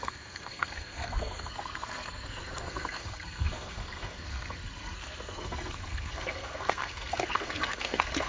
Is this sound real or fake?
fake